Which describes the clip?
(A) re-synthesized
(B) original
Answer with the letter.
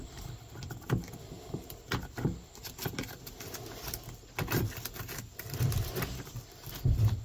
B